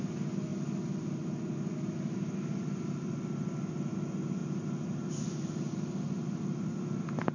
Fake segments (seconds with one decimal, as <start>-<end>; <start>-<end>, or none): none